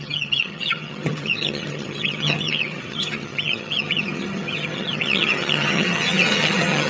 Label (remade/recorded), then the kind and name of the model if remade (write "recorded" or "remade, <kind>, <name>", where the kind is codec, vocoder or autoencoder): remade, vocoder, HiFi-GAN